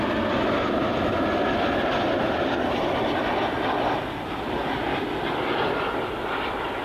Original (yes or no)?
yes